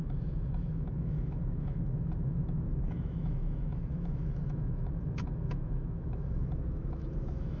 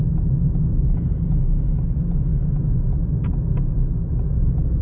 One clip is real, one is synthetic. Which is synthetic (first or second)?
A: first